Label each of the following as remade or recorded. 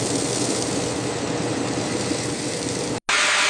recorded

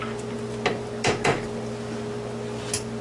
recorded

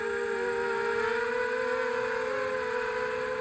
recorded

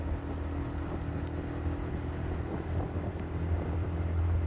recorded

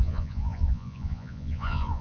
remade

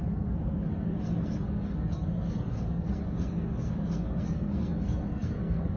remade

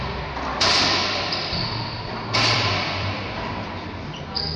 remade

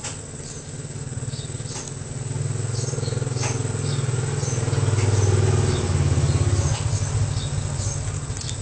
recorded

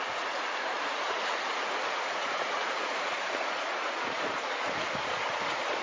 remade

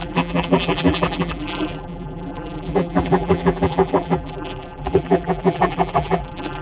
remade